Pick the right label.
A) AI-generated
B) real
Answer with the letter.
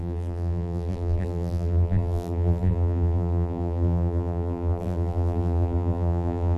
A